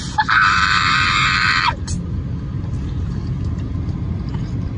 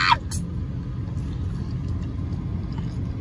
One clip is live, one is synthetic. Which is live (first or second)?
second